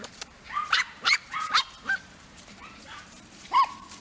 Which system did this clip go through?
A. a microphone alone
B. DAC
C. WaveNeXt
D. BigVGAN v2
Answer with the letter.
D